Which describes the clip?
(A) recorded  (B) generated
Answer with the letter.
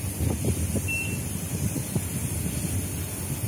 A